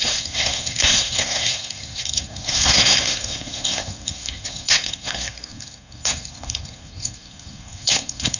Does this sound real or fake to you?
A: fake